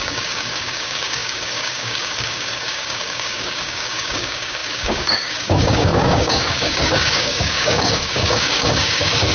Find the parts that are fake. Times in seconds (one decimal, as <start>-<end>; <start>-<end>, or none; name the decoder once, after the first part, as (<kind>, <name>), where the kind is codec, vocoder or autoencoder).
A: 0.0-9.3 (codec, DAC)